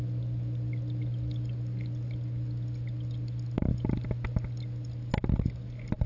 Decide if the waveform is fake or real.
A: real